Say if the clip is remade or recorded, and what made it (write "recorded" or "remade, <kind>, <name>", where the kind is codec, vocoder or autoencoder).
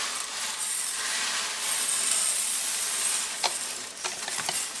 remade, vocoder, BigVGAN v2